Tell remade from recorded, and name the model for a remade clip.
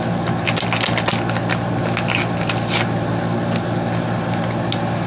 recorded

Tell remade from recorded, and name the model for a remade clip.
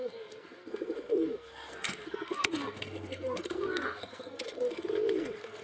remade, codec, SNAC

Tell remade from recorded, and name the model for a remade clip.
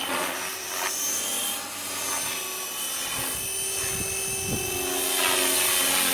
recorded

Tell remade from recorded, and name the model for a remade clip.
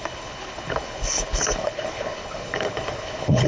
remade, codec, HILCodec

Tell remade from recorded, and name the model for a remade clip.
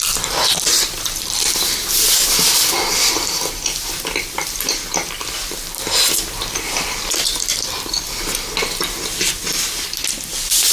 remade, vocoder, BigVGAN v2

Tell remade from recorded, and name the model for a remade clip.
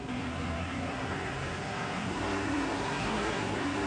remade, codec, SNAC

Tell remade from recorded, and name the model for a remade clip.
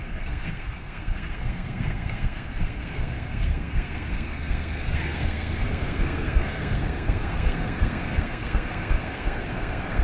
remade, codec, SNAC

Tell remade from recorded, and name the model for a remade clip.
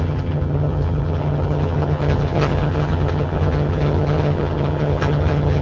remade, vocoder, HiFi-GAN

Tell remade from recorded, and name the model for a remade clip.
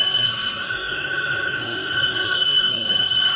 remade, codec, SNAC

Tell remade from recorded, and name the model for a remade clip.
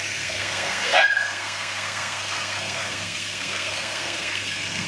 remade, codec, SNAC